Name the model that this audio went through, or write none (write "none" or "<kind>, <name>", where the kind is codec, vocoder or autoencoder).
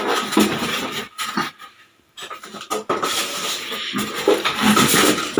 vocoder, BigVGAN v2